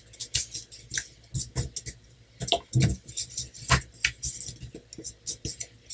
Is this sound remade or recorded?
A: recorded